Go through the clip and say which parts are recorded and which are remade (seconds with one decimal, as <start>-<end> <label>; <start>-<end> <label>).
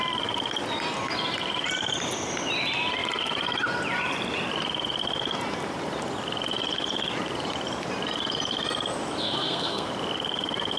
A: 0.0-9.2 recorded; 9.2-9.9 remade; 9.9-10.8 recorded